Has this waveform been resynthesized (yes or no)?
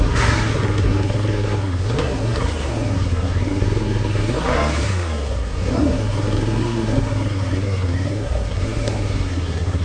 yes